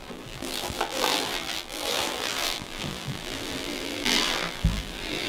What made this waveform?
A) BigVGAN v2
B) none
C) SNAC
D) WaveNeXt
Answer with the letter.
A